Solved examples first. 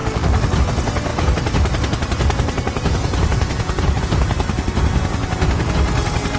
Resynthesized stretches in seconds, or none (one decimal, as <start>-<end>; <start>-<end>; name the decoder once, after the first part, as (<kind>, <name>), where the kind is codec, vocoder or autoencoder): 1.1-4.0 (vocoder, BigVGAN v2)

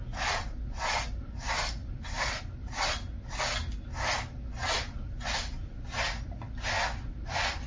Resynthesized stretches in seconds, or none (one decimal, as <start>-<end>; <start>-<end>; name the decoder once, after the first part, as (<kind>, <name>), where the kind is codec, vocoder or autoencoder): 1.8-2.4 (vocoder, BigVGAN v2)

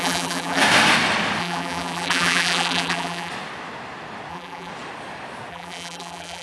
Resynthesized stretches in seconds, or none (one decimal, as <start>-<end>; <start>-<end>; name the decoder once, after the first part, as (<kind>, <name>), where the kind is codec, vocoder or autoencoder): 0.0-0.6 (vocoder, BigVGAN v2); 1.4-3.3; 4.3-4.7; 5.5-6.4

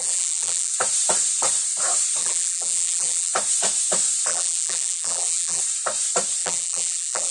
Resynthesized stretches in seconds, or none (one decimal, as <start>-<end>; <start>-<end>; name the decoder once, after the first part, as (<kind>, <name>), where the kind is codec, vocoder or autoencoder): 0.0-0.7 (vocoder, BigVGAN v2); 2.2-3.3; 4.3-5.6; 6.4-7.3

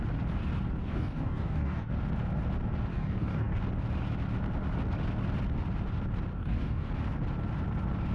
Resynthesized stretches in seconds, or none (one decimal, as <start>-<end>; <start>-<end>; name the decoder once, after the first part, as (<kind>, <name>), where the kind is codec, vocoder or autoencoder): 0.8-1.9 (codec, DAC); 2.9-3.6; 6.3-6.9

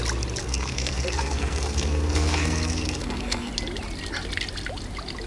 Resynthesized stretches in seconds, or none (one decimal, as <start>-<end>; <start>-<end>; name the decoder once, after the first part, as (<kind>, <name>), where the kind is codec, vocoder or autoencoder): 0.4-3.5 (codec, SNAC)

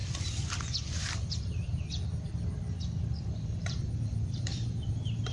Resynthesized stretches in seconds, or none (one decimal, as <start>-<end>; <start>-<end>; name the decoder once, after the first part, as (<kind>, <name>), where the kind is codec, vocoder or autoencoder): 3.2-5.3 (vocoder, BigVGAN v2)

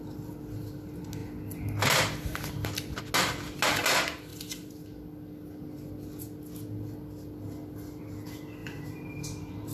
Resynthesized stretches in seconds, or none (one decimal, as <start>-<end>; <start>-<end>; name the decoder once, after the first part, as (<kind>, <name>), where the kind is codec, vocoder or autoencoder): 8.6-9.1 (vocoder, BigVGAN v2)